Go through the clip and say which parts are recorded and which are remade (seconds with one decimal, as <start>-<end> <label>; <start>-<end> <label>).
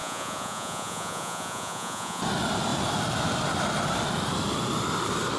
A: 0.0-2.2 remade; 2.2-5.4 recorded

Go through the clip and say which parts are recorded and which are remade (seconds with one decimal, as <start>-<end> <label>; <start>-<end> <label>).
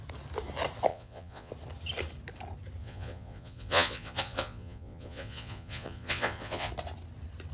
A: 0.0-0.9 recorded; 0.9-1.5 remade; 1.5-2.8 recorded; 2.8-6.7 remade; 6.7-7.5 recorded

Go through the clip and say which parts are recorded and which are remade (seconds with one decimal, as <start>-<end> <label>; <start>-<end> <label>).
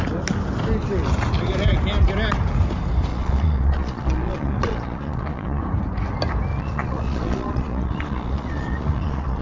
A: 0.0-3.1 recorded; 3.1-5.6 remade; 5.6-6.5 recorded; 6.5-9.4 remade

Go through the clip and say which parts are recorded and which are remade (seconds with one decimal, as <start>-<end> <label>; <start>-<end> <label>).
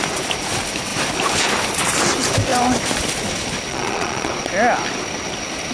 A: 0.0-3.7 recorded; 3.7-4.3 remade; 4.3-5.7 recorded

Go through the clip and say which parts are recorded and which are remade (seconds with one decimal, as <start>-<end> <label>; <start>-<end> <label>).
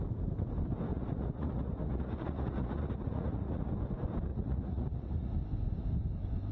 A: 0.0-0.9 recorded; 0.9-3.7 remade; 3.7-4.3 recorded; 4.3-5.3 remade; 5.3-6.5 recorded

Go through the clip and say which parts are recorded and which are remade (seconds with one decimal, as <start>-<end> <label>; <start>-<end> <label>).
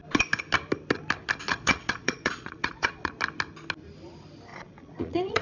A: 0.0-1.5 recorded; 1.5-3.1 remade; 3.1-4.5 recorded; 4.5-5.4 remade